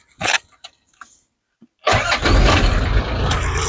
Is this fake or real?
real